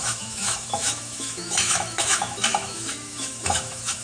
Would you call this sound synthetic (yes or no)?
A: yes